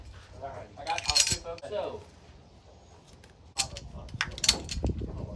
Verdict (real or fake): real